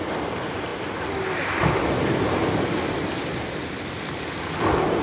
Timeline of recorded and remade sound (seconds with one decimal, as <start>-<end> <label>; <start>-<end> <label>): 0.0-5.0 recorded